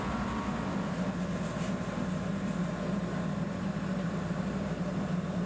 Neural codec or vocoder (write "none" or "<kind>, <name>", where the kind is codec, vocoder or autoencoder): none